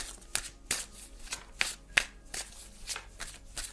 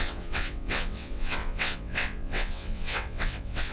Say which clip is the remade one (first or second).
second